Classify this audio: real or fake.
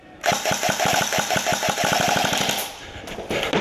fake